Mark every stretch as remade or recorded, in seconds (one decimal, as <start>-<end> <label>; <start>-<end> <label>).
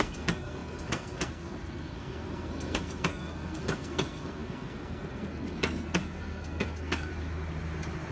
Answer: 0.0-7.1 remade; 7.1-8.1 recorded